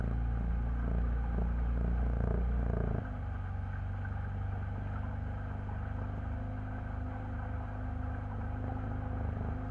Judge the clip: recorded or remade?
recorded